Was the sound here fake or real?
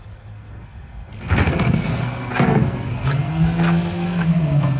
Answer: fake